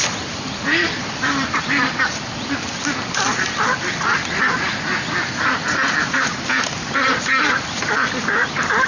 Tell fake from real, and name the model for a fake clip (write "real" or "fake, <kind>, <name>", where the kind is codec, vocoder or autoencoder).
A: real